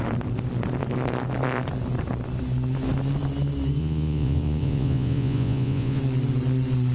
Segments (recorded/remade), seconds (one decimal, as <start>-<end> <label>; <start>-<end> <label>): 0.0-3.8 recorded; 3.8-6.0 remade; 6.0-6.9 recorded